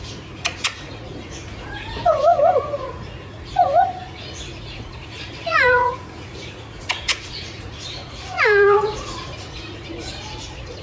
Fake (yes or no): yes